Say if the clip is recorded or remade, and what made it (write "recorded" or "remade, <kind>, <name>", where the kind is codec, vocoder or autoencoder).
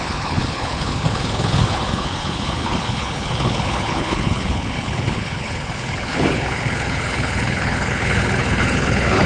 remade, codec, HILCodec